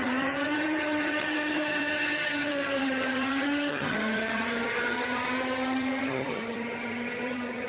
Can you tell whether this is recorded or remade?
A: remade